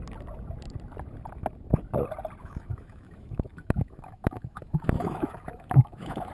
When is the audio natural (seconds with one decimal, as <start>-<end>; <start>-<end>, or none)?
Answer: 0.0-2.4